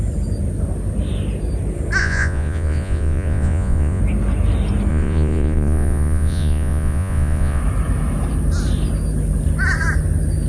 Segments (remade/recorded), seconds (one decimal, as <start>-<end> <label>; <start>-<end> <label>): 0.0-2.0 recorded; 2.0-4.0 remade; 4.0-4.9 recorded; 4.9-7.6 remade; 7.6-10.5 recorded